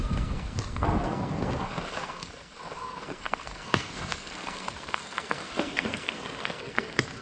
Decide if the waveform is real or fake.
fake